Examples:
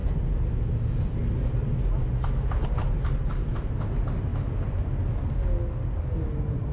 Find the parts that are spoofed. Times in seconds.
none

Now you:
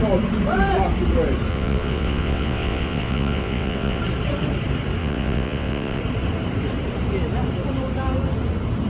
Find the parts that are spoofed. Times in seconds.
1.5-4.0; 5.0-6.0

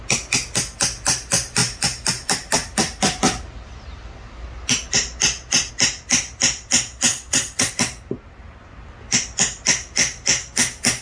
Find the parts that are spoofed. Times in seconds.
7.1-7.7

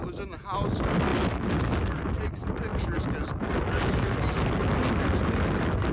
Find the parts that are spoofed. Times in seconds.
none

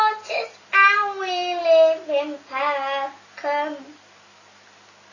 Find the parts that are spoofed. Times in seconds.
none

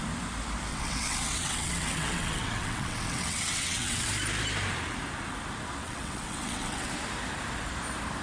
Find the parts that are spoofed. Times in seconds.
0.7-4.1; 5.8-6.9

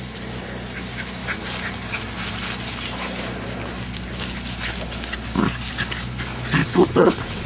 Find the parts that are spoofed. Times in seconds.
6.6-7.5